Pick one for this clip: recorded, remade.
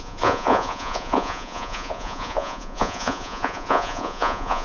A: remade